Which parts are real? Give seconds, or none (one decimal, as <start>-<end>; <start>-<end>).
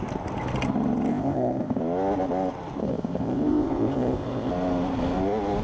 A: 0.0-1.1; 1.8-2.8; 4.5-5.6